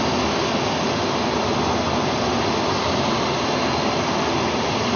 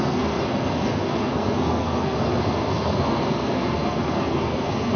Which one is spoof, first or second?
second